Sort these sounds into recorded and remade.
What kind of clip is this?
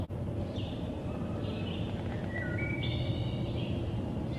recorded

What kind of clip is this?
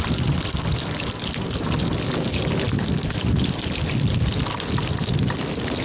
recorded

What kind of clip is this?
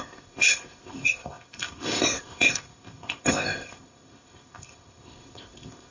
remade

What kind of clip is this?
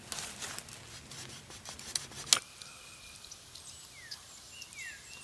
recorded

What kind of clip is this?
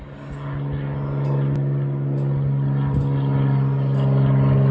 recorded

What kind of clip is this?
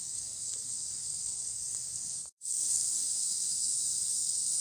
remade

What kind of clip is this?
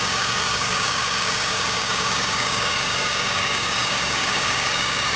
remade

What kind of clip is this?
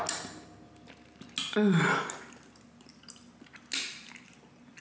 recorded